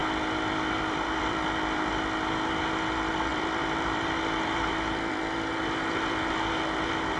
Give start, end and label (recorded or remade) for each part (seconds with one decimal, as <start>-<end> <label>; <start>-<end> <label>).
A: 0.0-1.9 remade; 1.9-3.3 recorded; 3.3-5.2 remade; 5.2-7.2 recorded